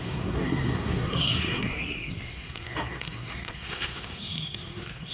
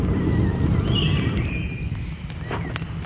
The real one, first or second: second